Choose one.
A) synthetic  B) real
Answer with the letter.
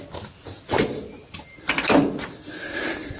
B